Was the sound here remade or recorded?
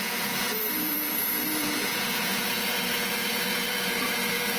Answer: remade